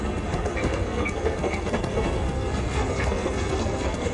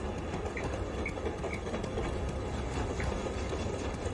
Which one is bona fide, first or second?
second